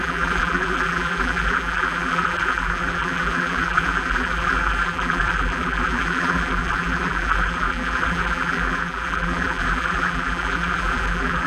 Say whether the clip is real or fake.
fake